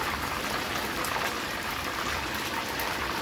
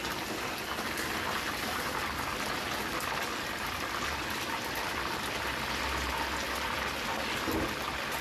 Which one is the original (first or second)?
second